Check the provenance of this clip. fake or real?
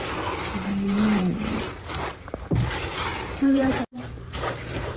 fake